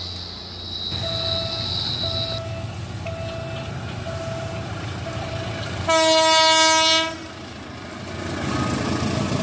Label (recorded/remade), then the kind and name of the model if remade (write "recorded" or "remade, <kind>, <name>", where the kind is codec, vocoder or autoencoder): recorded